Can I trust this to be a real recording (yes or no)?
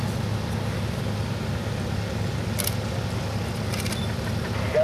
yes